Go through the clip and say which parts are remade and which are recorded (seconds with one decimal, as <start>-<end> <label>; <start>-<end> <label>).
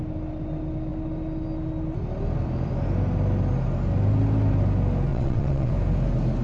0.0-5.1 recorded; 5.1-5.7 remade; 5.7-6.4 recorded